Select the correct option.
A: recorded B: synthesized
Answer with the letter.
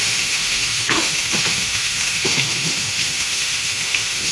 B